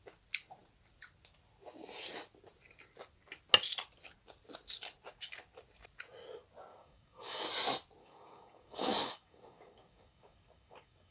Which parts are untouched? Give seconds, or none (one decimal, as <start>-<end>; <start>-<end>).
0.0-6.7; 7.5-8.0